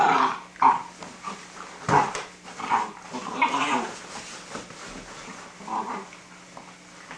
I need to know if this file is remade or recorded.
recorded